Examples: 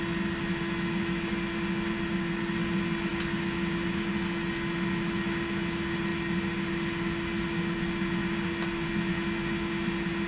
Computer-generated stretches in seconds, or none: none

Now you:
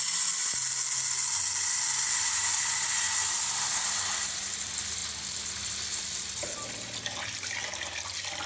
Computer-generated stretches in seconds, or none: none